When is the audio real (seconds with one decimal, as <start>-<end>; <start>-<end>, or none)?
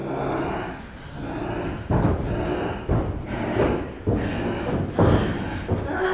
0.0-6.1